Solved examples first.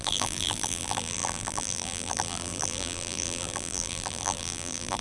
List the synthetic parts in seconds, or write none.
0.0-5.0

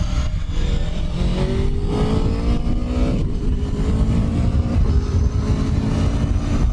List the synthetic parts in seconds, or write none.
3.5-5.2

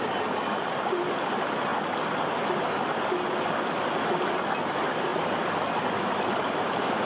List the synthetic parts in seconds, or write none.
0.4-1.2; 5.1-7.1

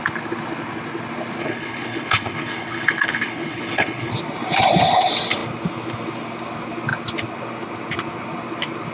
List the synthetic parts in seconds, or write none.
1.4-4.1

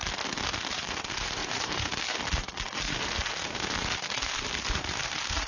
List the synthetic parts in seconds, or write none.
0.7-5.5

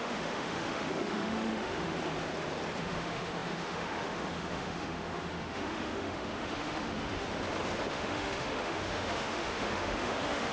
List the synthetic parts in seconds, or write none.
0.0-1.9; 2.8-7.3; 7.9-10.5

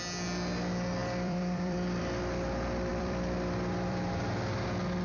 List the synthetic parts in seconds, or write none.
1.0-2.0; 2.9-4.3